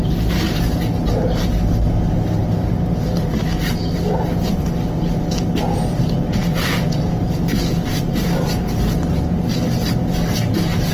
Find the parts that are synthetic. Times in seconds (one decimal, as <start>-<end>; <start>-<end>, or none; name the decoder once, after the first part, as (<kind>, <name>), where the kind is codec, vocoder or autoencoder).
2.4-4.2 (vocoder, BigVGAN v2); 6.4-7.6